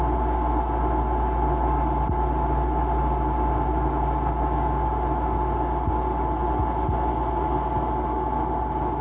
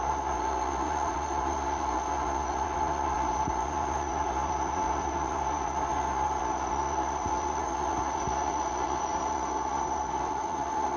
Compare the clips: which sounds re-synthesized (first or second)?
second